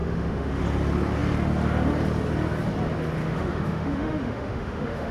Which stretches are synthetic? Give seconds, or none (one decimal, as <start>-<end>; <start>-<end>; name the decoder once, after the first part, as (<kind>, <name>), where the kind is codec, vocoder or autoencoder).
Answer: 0.0-0.6 (autoencoder, DAC-VAE); 3.2-5.1